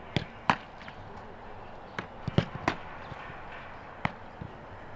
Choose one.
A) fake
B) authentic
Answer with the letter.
B